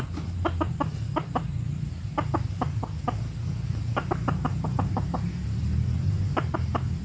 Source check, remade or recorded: recorded